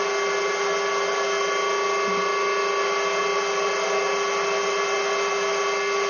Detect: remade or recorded recorded